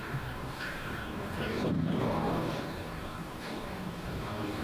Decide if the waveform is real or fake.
fake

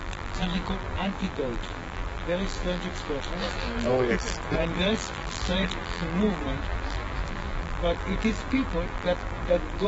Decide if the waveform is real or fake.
fake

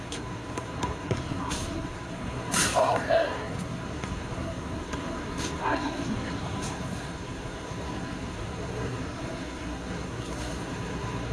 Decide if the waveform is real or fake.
fake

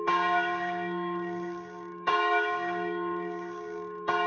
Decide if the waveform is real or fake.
fake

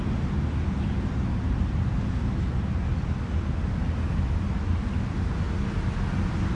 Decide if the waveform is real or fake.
real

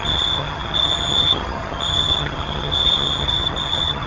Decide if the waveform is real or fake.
fake